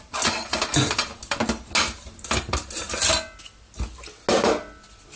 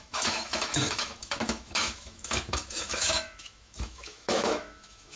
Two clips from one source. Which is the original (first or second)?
first